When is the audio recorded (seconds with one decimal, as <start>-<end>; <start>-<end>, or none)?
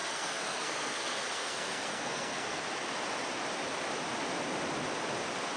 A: 2.6-5.6